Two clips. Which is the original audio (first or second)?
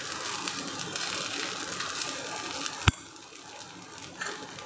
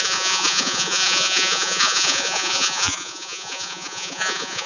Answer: first